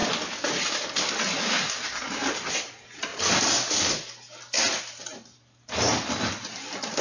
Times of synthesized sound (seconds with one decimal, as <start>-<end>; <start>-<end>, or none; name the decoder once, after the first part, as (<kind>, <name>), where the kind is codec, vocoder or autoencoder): none